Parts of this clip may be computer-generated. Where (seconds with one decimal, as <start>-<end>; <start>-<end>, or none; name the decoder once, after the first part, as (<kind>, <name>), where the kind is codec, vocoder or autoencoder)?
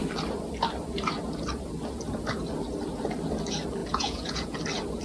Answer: 3.8-4.6 (vocoder, Vocos)